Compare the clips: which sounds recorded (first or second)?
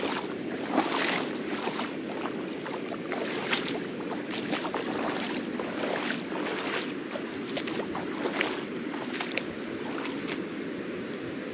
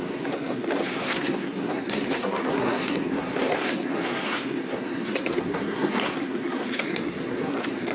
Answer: first